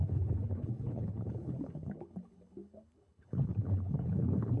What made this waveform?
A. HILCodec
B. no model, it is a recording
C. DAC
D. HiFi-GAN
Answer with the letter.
A